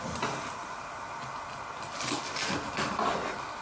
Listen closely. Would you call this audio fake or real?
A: real